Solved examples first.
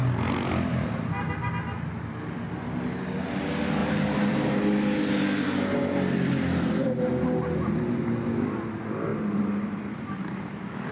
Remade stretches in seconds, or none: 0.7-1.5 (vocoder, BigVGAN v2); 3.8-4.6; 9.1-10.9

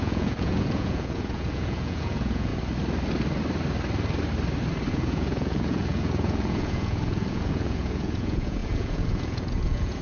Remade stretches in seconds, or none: 0.0-2.5 (vocoder, Vocos); 4.9-10.0

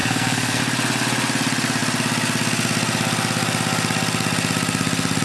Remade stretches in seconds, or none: 0.0-0.6 (codec, SNAC)

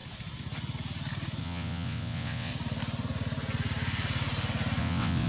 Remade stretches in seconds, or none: 1.4-2.5 (vocoder, WaveNeXt); 4.8-5.3